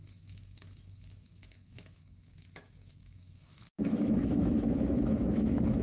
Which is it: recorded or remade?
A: remade